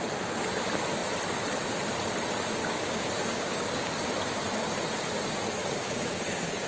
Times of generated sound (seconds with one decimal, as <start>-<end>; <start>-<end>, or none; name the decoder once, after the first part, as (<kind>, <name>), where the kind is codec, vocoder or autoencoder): 2.6-4.1 (codec, DAC); 5.6-6.7